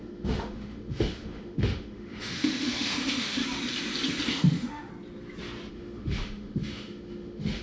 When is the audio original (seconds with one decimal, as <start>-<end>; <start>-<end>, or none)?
3.4-4.3; 4.9-5.7

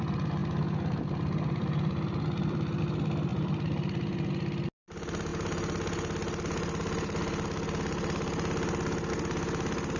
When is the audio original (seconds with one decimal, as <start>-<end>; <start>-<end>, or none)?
0.0-10.0

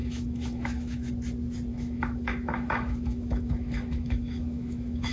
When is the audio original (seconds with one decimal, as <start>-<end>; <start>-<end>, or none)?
1.1-1.7